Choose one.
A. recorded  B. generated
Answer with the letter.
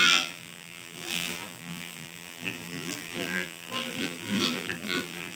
B